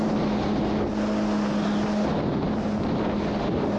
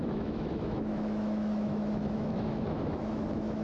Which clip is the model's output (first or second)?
second